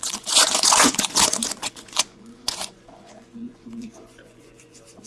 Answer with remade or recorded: remade